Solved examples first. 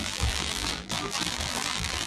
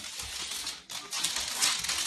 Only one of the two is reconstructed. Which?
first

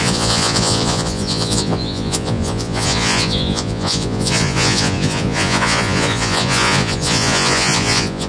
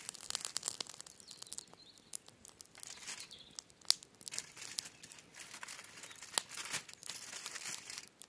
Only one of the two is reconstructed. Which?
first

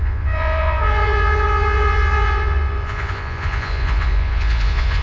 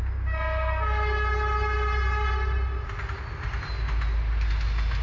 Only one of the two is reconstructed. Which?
first